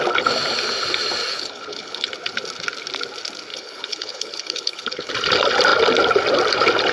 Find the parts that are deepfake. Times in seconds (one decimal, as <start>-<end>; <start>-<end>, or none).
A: 1.3-2.1; 3.5-5.1